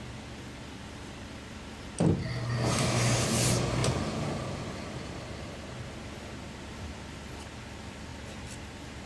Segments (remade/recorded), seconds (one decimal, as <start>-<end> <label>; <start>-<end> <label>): 0.0-9.1 recorded